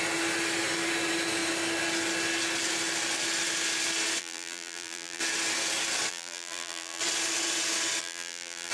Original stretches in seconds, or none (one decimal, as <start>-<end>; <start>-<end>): 0.0-4.2; 5.2-6.1; 7.0-8.0